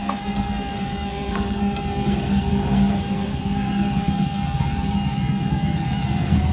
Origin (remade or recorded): remade